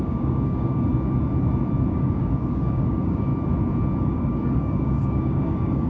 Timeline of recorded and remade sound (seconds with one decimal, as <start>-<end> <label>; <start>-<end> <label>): 0.0-0.9 remade; 0.9-1.9 recorded; 1.9-3.3 remade; 3.3-4.0 recorded; 4.0-5.9 remade